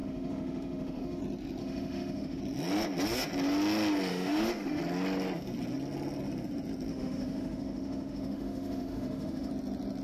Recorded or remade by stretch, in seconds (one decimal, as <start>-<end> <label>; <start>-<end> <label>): 0.0-1.2 remade; 1.2-1.6 recorded; 1.6-2.4 remade; 2.4-4.1 recorded; 4.1-4.8 remade; 4.8-6.9 recorded; 6.9-9.5 remade; 9.5-10.0 recorded